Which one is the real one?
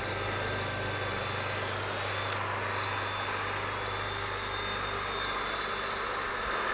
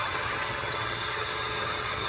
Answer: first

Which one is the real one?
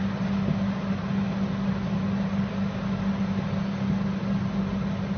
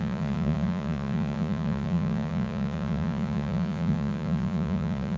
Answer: first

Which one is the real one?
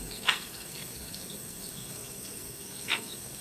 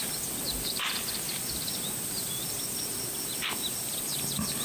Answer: second